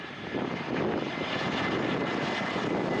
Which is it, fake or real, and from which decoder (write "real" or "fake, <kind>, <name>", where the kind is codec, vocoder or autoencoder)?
real